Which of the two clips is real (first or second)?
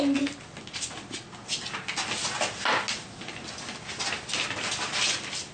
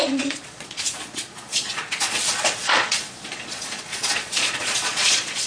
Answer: first